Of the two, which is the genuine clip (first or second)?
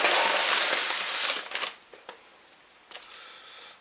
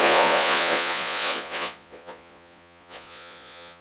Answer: first